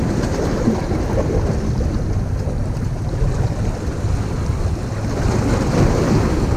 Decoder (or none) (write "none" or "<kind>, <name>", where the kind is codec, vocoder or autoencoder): none